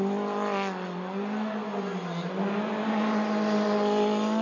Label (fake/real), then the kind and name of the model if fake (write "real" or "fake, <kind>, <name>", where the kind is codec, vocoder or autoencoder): real